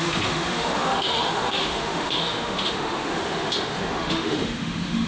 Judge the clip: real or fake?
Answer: fake